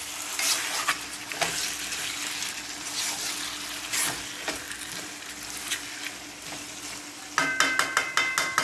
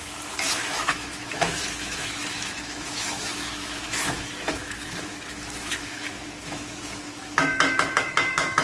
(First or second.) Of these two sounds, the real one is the first